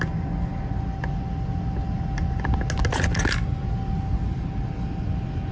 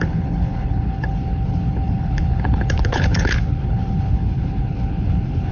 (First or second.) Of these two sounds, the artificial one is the second